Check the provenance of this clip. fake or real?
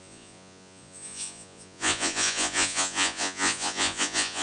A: fake